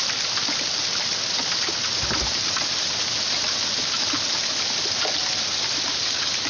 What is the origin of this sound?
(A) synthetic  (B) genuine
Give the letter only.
B